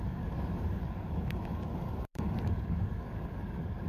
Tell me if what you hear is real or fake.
fake